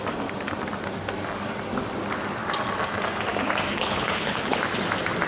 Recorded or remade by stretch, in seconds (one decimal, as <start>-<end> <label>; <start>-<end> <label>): 0.0-3.7 recorded; 3.7-4.6 remade; 4.6-5.3 recorded